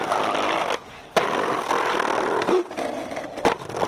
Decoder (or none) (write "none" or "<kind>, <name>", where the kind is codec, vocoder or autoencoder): none